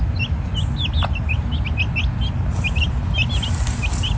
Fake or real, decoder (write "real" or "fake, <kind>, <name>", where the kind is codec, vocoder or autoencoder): real